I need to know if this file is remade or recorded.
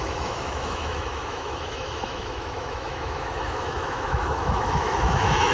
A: remade